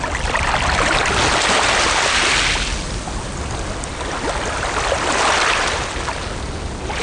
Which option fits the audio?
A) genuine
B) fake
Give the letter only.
A